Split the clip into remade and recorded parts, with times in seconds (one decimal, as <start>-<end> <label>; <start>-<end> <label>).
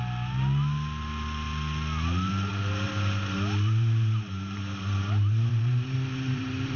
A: 0.0-2.5 recorded; 2.5-6.8 remade